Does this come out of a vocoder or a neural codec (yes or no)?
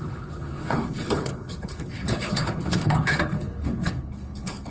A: yes